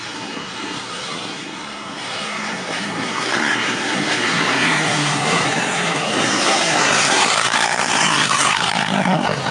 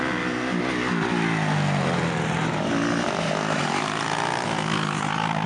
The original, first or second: second